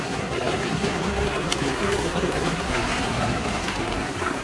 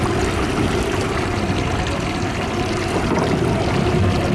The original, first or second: second